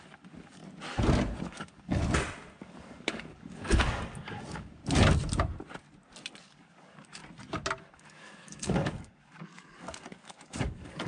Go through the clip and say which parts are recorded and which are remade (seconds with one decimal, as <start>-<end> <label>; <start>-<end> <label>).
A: 0.0-0.6 remade; 0.6-1.4 recorded; 1.4-2.0 remade; 2.0-2.6 recorded; 2.6-4.8 remade; 4.8-6.4 recorded; 6.4-7.2 remade; 7.2-7.8 recorded; 7.8-11.1 remade